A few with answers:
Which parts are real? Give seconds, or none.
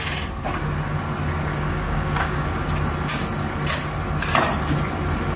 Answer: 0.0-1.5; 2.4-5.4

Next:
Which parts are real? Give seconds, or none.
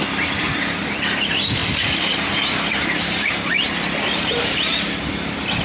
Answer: 0.0-1.6; 4.7-5.6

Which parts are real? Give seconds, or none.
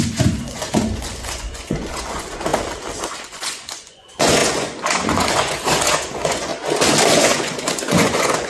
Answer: 2.5-3.0; 6.5-7.1